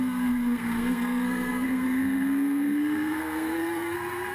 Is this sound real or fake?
fake